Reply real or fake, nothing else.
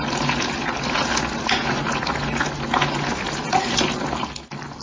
real